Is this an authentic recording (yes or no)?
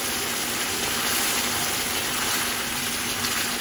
yes